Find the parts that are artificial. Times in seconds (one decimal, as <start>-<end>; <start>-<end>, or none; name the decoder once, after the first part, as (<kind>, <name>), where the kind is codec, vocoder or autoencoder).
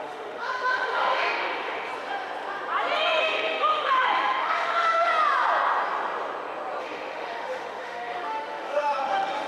0.0-1.9 (autoencoder, DAC-VAE); 3.2-5.1; 6.8-9.5